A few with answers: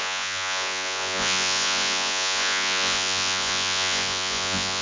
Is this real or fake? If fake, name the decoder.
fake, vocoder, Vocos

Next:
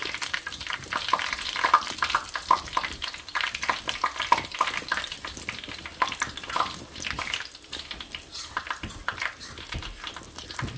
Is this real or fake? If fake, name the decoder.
real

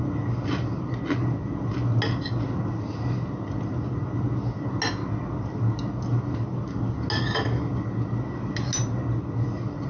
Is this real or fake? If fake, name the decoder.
real